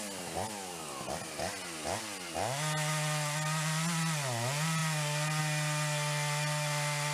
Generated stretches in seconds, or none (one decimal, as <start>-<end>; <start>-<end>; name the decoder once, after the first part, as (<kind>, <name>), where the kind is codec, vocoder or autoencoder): none